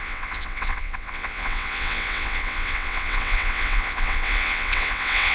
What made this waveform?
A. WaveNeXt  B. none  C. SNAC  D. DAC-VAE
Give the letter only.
A